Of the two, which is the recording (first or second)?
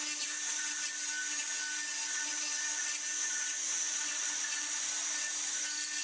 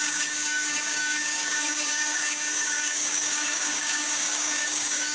first